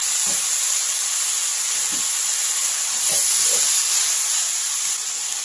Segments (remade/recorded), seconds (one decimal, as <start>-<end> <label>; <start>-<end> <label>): 0.0-5.4 recorded